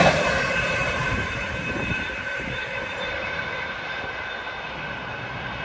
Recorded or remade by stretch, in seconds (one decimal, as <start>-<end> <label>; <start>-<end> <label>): 0.0-0.8 recorded; 0.8-4.2 remade; 4.2-5.6 recorded